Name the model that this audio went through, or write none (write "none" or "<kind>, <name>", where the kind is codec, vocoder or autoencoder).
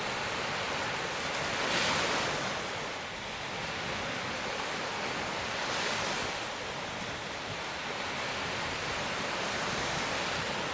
none